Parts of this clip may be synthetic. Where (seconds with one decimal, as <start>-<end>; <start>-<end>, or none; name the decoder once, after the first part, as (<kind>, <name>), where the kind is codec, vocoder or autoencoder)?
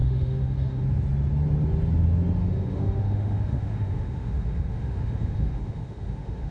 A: 0.0-0.8 (autoencoder, DAC-VAE); 2.4-6.5